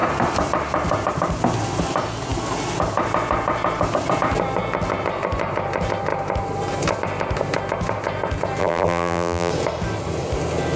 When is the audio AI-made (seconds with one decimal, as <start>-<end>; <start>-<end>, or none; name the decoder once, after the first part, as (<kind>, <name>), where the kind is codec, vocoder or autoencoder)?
8.6-9.5 (vocoder, BigVGAN v2)